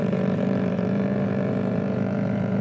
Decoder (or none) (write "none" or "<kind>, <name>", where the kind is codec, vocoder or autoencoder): vocoder, BigVGAN v2